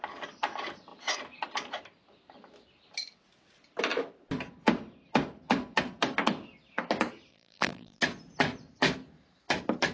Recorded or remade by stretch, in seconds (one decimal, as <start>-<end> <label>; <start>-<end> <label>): 0.0-7.3 recorded; 7.3-8.0 remade; 8.0-9.9 recorded